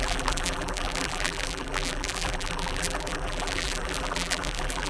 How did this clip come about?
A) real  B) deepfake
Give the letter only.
B